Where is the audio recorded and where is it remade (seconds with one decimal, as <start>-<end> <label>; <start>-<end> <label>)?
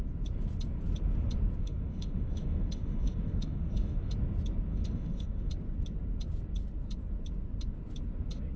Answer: 0.0-1.6 recorded; 1.6-4.1 remade; 4.1-4.7 recorded; 4.7-5.5 remade; 5.5-8.6 recorded